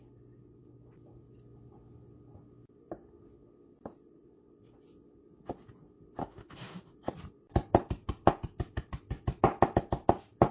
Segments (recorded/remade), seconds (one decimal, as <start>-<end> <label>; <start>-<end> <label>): 0.0-6.2 recorded; 6.2-6.9 remade; 6.9-10.5 recorded